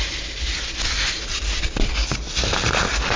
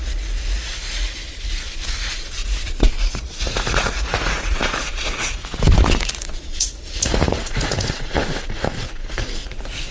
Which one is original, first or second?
first